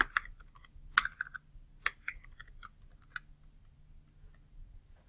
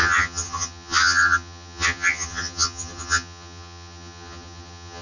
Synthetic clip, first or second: second